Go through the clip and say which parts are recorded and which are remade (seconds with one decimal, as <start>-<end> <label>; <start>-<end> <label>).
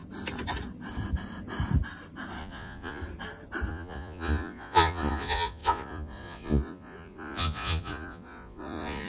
0.0-2.4 recorded; 2.4-3.0 remade; 3.0-3.7 recorded; 3.7-9.1 remade